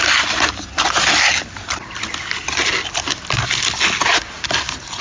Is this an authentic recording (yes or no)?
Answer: yes